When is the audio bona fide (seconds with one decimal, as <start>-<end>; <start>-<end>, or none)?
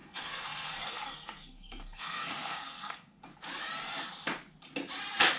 3.2-5.4